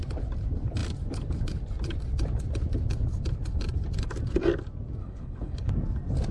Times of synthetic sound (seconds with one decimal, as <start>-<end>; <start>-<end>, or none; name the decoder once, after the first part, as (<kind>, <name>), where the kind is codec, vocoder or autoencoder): 5.0-5.7 (codec, HILCodec)